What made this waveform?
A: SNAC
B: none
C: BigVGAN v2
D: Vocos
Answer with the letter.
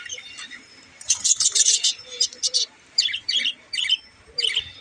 C